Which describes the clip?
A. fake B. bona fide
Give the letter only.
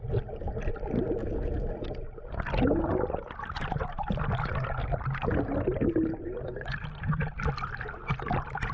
B